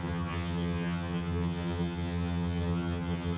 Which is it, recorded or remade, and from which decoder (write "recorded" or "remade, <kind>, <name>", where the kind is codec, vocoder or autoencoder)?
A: remade, vocoder, HiFi-GAN